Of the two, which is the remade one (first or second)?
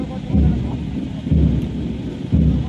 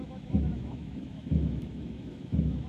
second